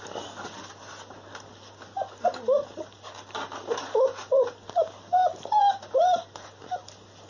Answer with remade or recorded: recorded